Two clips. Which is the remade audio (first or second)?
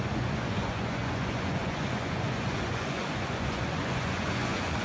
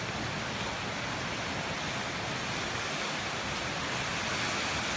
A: first